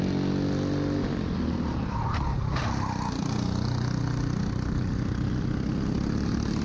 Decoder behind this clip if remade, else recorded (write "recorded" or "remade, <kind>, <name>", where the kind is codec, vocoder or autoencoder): recorded